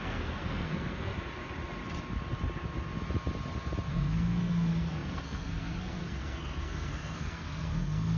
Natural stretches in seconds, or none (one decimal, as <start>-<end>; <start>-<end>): 1.1-3.9